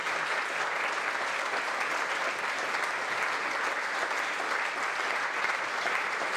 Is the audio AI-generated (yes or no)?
no